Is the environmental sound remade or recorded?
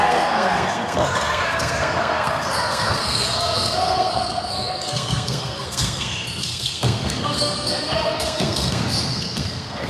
remade